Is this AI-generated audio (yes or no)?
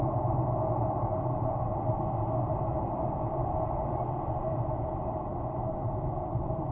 yes